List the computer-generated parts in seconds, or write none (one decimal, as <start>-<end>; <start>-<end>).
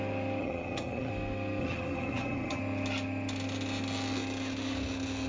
0.4-1.1; 1.6-2.6